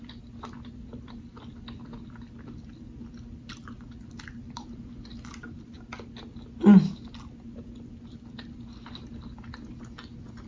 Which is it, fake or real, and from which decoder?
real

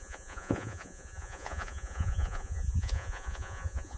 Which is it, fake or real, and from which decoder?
fake, vocoder, Vocos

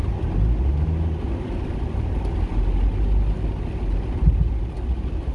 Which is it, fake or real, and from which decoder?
real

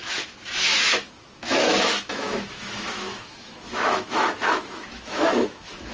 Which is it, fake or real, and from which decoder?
fake, autoencoder, DAC-VAE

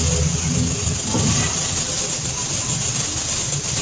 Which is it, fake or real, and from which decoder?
real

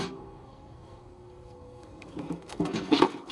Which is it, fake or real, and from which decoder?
fake, codec, SNAC